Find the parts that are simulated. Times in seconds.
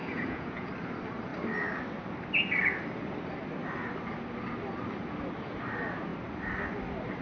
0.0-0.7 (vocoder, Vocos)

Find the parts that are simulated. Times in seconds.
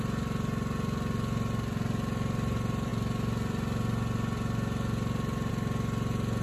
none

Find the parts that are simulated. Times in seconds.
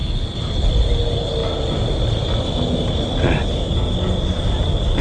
none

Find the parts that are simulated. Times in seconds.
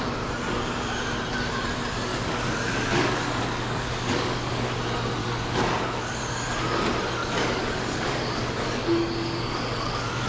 2.1-4.7 (codec, DAC); 5.2-6.2; 7.2-10.3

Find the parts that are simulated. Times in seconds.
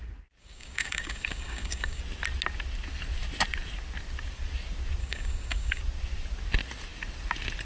0.4-2.0 (codec, DAC); 5.0-5.8